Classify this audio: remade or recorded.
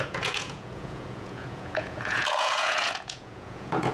remade